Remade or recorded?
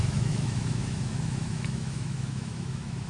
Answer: remade